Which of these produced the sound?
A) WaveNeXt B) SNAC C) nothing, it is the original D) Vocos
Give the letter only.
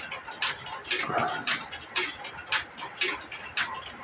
C